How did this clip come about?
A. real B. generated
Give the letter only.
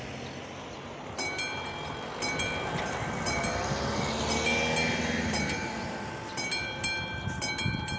A